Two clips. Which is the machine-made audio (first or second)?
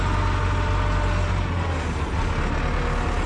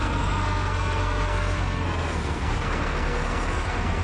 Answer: second